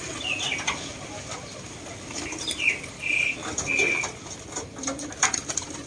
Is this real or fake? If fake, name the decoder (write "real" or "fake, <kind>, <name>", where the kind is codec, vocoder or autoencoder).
real